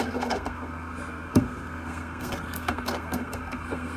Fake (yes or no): yes